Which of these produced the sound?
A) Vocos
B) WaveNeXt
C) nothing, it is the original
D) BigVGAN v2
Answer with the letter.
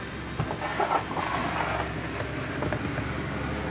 C